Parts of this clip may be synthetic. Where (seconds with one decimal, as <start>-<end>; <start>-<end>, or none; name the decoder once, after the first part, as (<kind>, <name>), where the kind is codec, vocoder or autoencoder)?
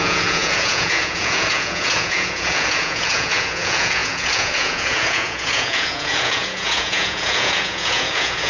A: 0.0-8.5 (vocoder, Vocos)